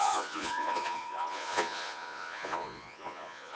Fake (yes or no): yes